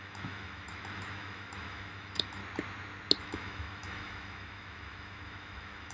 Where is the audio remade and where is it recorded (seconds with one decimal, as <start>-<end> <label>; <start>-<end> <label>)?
0.0-2.4 remade; 2.4-3.2 recorded; 3.2-5.9 remade